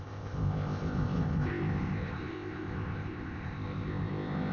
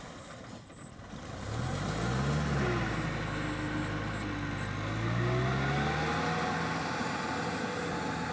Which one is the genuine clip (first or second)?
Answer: second